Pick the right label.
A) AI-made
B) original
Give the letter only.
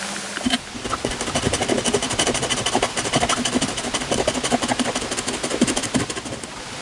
A